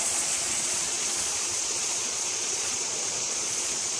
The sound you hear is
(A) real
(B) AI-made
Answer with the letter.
B